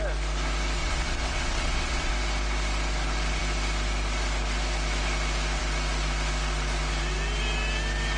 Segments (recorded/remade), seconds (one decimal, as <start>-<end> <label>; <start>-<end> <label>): 0.0-0.8 recorded; 0.8-2.1 remade; 2.1-8.2 recorded